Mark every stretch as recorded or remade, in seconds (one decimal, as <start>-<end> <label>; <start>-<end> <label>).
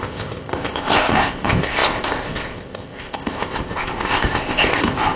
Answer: 0.0-5.2 remade